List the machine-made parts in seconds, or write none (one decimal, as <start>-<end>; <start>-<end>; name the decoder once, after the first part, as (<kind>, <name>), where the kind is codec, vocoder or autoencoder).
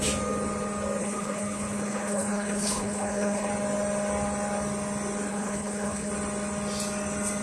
1.0-3.5 (codec, HILCodec); 5.3-6.1